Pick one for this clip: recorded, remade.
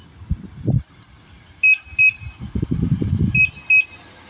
recorded